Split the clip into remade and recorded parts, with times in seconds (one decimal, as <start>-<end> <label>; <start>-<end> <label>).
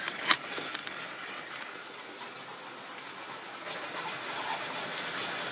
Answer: 0.0-5.5 recorded